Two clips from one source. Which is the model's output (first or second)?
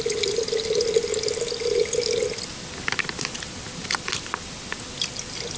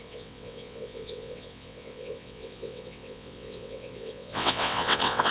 second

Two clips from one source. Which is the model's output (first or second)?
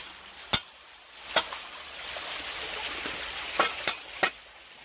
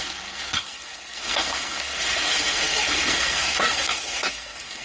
second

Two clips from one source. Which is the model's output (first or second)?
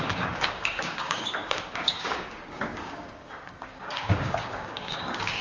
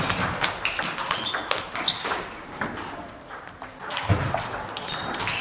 first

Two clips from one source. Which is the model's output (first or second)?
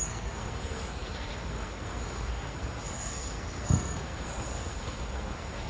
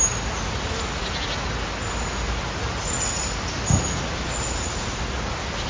first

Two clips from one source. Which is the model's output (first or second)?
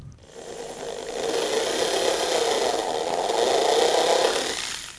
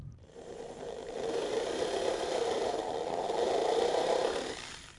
second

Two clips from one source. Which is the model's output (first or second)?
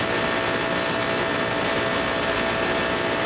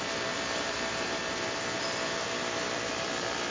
second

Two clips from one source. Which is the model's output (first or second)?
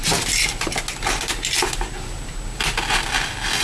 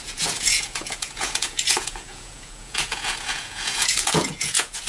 second